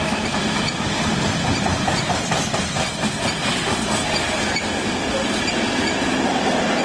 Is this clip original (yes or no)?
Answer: yes